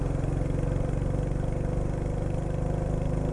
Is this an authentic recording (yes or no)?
yes